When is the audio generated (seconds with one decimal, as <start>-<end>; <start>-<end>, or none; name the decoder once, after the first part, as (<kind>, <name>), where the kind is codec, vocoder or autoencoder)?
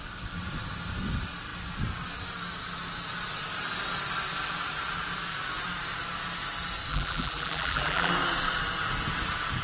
6.9-8.1 (vocoder, BigVGAN v2)